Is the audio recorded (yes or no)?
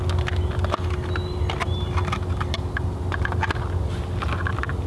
yes